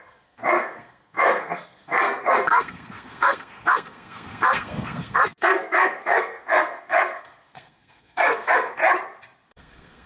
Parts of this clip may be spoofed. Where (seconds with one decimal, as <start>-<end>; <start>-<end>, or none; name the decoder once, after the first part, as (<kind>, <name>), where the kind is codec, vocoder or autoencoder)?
0.0-8.8 (codec, SNAC); 9.5-10.1